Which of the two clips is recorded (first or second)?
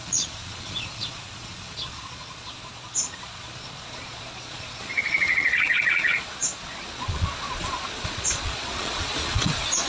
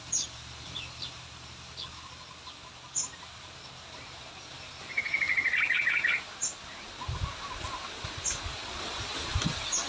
second